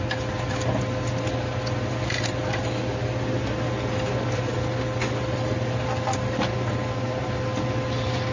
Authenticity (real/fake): real